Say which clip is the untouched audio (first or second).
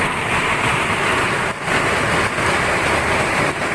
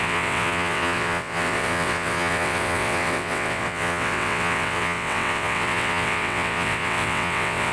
first